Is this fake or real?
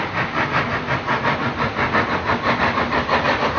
real